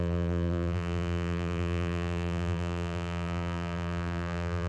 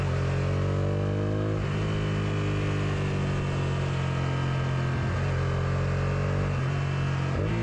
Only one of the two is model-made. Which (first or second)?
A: first